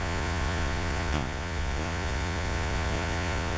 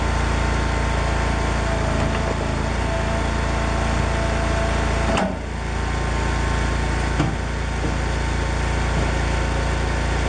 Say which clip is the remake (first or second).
first